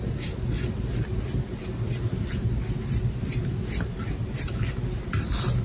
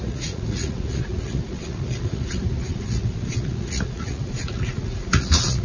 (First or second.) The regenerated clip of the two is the second